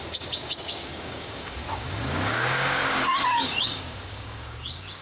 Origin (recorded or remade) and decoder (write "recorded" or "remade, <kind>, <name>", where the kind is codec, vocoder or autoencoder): remade, codec, DAC